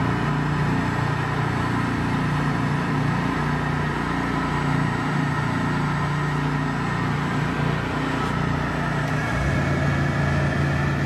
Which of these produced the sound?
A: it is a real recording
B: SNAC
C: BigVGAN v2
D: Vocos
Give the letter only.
A